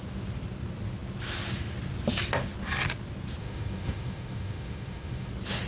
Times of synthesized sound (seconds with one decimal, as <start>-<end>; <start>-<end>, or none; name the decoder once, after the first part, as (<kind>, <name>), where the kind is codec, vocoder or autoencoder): 3.4-5.3 (autoencoder, DAC-VAE)

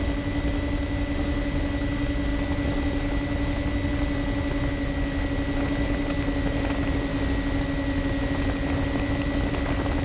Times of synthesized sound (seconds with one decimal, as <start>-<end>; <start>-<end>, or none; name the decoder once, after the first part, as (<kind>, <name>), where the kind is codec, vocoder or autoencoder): none

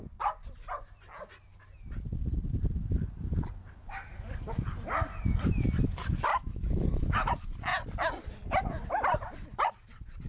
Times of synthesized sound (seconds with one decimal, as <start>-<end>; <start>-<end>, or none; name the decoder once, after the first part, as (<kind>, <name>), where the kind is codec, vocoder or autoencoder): 6.3-7.3 (autoencoder, DAC-VAE)

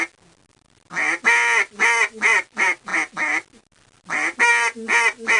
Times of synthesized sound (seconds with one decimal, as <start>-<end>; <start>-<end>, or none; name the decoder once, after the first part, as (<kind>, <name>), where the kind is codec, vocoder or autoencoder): none